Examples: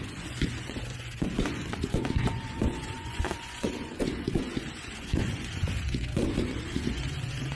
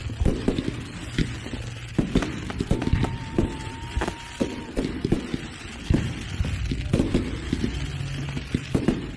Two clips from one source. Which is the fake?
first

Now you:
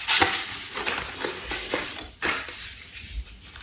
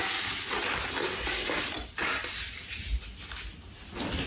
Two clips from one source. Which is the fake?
first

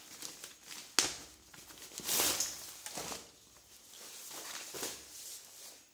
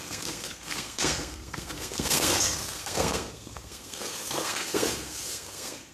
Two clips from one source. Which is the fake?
second